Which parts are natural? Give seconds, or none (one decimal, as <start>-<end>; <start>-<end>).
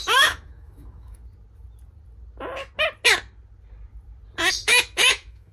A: 1.2-4.5